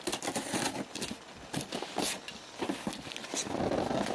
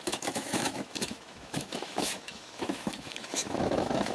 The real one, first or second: first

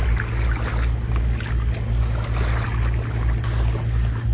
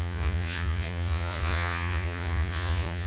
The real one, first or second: first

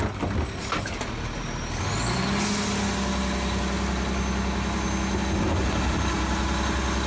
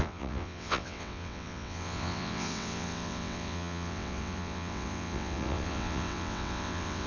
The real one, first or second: first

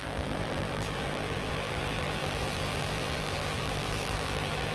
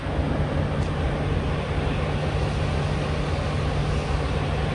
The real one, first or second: second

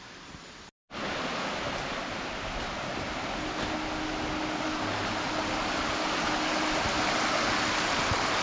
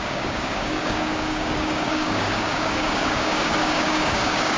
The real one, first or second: first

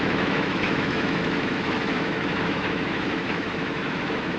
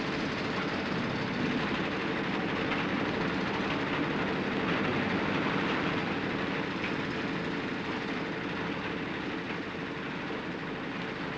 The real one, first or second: second